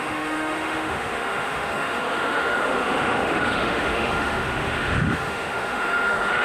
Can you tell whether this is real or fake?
fake